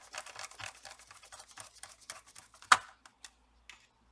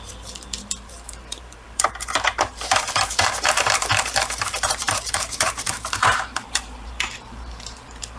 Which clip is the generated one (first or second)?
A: second